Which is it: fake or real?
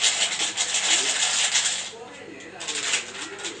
real